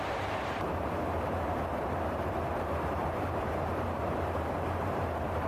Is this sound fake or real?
fake